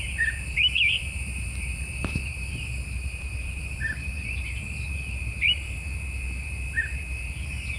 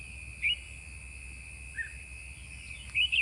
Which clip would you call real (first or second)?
second